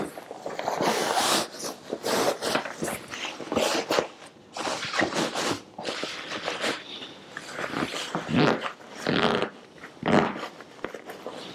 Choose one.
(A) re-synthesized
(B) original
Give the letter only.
B